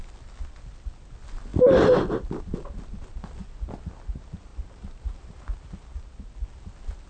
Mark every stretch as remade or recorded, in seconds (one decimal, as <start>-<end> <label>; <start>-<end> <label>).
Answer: 0.0-4.5 recorded; 4.5-5.3 remade; 5.3-7.1 recorded